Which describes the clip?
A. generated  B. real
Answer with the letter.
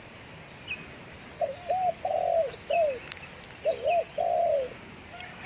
B